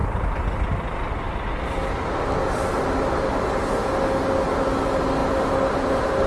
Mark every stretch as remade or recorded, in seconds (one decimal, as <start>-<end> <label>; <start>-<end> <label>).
0.0-6.3 recorded